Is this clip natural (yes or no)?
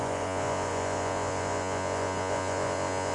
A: no